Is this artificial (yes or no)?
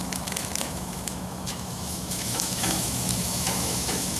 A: yes